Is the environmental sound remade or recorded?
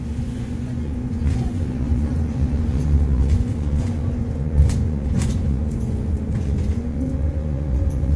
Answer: remade